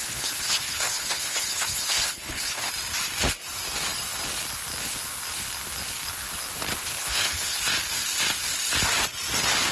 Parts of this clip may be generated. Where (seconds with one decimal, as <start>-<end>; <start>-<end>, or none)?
0.0-2.7; 6.8-7.6